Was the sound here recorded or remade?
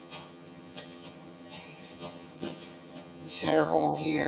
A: remade